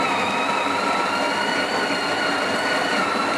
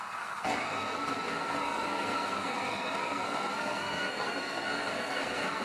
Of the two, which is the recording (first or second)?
first